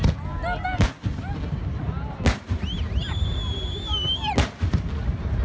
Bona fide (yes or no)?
yes